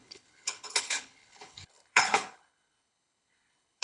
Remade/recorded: remade